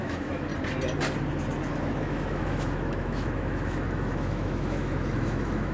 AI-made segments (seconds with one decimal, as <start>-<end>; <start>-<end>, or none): 0.0-0.5; 1.7-5.7